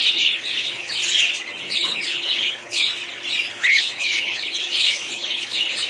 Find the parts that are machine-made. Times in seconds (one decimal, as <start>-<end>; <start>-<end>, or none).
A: 0.0-1.0; 1.6-2.9; 3.5-5.9